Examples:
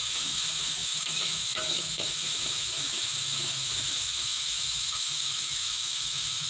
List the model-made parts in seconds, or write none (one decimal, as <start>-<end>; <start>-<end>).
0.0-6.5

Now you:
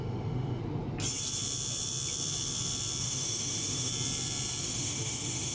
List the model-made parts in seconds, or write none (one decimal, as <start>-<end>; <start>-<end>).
0.0-0.6; 3.0-3.9; 4.6-5.5

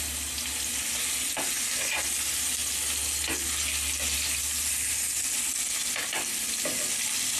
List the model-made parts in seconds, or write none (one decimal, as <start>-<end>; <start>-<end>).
none

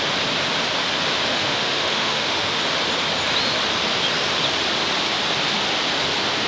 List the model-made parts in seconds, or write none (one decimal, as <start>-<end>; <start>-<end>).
1.3-2.6

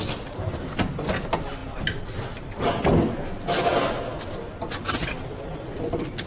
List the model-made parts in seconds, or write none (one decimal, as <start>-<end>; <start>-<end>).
none